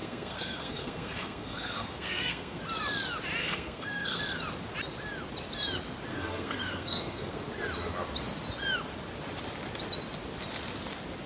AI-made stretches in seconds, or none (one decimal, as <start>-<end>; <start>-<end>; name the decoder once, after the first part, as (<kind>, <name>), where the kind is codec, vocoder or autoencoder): 0.0-2.6 (codec, SNAC); 3.4-4.2; 6.1-7.5